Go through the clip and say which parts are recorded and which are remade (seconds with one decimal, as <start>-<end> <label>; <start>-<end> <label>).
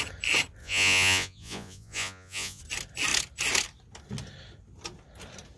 0.0-0.6 recorded; 0.6-2.6 remade; 2.6-5.6 recorded